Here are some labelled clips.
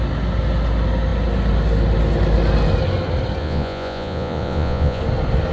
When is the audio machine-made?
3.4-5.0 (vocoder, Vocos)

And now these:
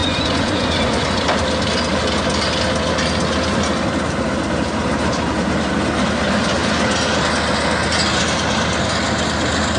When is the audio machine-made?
0.0-1.2 (vocoder, Vocos)

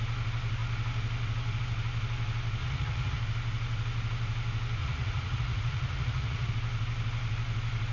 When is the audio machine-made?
2.6-3.2 (vocoder, Vocos); 4.8-6.5

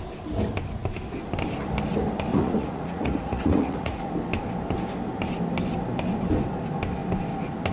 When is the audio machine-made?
2.3-4.1 (vocoder, Vocos)